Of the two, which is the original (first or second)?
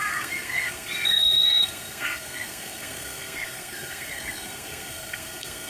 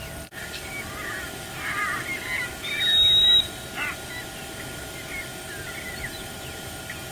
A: second